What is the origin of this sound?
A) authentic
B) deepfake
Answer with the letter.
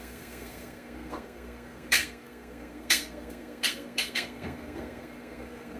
B